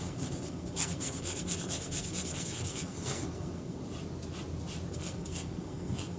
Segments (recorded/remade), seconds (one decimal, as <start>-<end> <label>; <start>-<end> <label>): 0.0-3.8 remade; 3.8-4.9 recorded; 4.9-6.2 remade